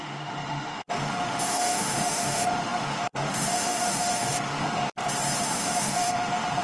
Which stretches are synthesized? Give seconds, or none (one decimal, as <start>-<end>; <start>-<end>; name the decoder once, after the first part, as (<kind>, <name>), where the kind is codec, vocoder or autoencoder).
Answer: 0.0-4.8 (autoencoder, DAC-VAE); 5.4-6.6

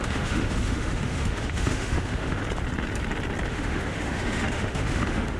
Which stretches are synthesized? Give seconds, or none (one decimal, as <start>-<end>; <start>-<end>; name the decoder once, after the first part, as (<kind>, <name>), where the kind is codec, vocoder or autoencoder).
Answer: 0.0-2.4 (autoencoder, DAC-VAE); 3.5-5.4